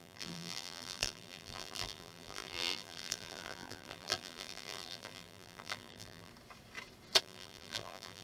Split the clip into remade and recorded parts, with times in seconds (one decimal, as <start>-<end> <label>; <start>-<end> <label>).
0.0-6.3 remade; 6.3-7.2 recorded; 7.2-8.2 remade